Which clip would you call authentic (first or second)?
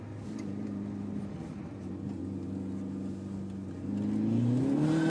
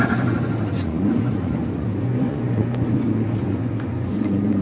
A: first